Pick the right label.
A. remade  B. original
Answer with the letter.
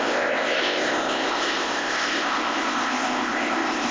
A